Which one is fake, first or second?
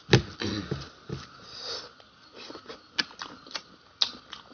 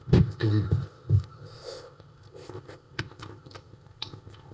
second